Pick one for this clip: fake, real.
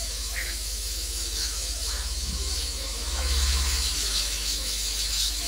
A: fake